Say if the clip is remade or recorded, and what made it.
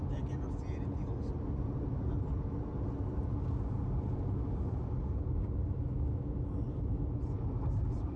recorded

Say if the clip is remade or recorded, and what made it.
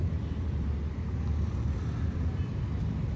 recorded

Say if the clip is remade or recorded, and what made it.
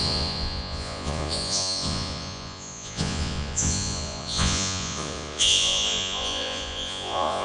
remade, vocoder, Vocos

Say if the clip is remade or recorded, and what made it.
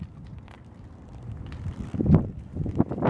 recorded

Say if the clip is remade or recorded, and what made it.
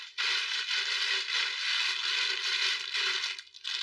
recorded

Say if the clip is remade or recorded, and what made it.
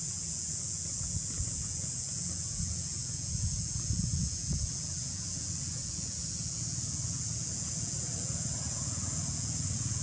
remade, vocoder, Vocos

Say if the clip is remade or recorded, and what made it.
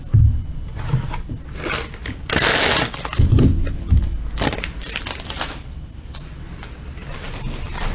recorded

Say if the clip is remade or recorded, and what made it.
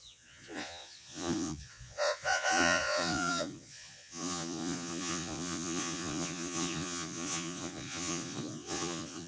remade, vocoder, Vocos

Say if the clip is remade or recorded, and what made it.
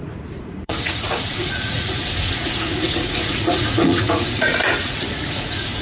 remade, vocoder, Vocos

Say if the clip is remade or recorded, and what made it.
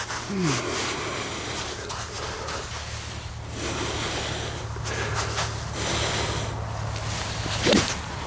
recorded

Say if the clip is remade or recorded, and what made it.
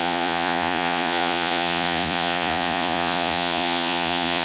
remade, vocoder, Vocos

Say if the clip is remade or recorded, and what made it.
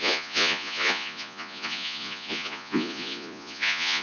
remade, vocoder, Vocos